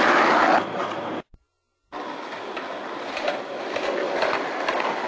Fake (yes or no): no